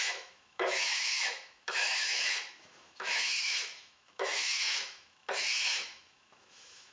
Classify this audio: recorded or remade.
remade